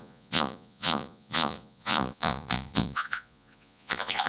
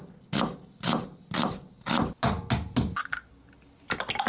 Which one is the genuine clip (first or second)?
second